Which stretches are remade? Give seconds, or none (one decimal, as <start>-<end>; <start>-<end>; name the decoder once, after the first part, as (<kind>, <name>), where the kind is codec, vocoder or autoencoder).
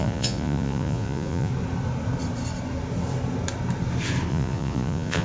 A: 0.0-1.5 (vocoder, Vocos); 4.3-5.2